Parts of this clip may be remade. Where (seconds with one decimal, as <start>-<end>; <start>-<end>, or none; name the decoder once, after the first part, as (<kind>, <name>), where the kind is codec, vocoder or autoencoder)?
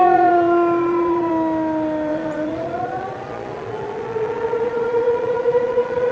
0.0-1.3 (vocoder, Vocos); 2.1-6.1